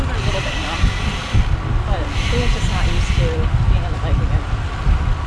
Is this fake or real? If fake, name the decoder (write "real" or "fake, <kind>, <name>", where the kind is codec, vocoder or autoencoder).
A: real